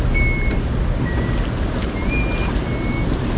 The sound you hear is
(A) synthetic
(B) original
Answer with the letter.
B